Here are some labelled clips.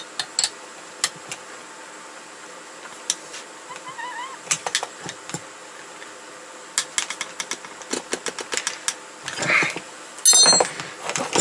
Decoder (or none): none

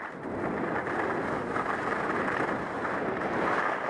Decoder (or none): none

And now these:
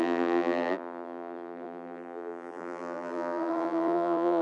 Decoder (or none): vocoder, BigVGAN v2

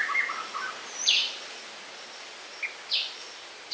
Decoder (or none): none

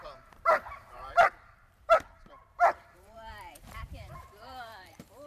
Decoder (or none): vocoder, BigVGAN v2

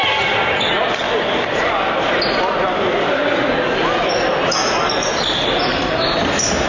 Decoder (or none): none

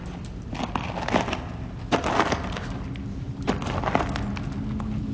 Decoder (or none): none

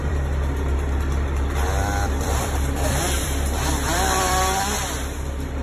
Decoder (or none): vocoder, BigVGAN v2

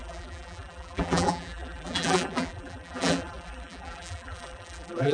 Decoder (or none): vocoder, BigVGAN v2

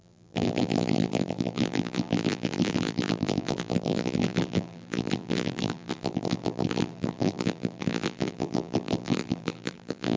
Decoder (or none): vocoder, BigVGAN v2